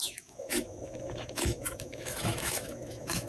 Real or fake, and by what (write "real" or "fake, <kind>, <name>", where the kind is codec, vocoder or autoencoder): fake, autoencoder, DAC-VAE